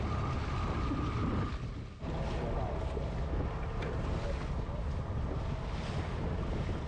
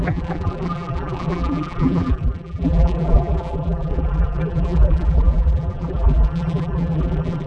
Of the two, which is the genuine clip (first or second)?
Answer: first